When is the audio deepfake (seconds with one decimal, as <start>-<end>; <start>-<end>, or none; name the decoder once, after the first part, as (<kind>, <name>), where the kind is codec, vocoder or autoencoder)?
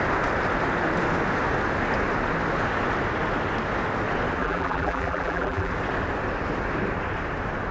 4.4-5.7 (vocoder, BigVGAN v2)